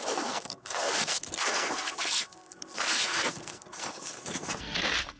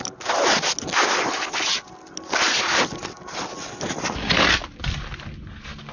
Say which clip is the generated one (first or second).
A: first